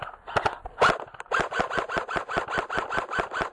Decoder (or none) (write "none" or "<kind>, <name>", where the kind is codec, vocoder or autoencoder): none